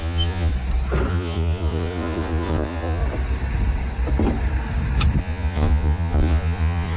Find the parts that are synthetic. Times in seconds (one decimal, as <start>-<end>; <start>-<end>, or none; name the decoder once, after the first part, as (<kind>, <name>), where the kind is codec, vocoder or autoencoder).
0.0-0.5 (vocoder, Vocos); 1.1-3.0; 5.2-7.0